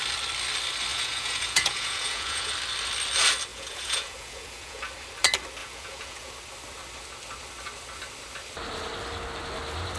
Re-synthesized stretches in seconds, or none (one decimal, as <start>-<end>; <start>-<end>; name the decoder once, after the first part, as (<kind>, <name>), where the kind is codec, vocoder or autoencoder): 0.9-2.5 (vocoder, Vocos); 3.5-4.8; 5.6-6.3